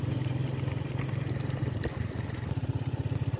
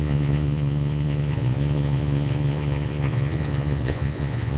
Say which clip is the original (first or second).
first